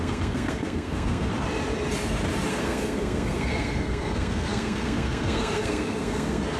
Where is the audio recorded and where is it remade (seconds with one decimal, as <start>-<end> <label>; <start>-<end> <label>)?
0.0-1.3 remade; 1.3-2.5 recorded; 2.5-6.6 remade